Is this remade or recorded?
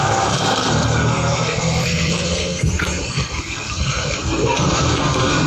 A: remade